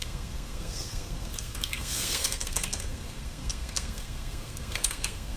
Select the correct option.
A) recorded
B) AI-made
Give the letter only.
B